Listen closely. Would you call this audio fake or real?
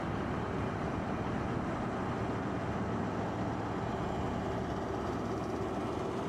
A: real